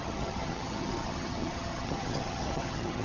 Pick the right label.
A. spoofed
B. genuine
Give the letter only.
A